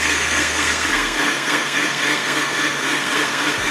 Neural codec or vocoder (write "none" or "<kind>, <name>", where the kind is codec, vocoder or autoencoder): codec, SNAC